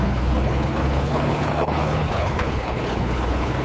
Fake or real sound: fake